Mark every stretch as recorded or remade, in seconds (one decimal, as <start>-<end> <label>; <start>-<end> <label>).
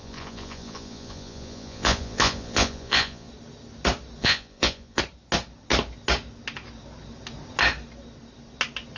0.0-3.3 remade; 3.3-4.2 recorded; 4.2-5.0 remade; 5.0-9.0 recorded